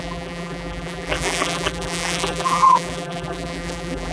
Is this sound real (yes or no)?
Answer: no